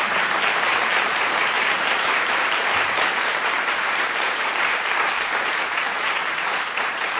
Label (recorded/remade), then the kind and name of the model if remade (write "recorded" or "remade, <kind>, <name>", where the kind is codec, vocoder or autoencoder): remade, vocoder, BigVGAN v2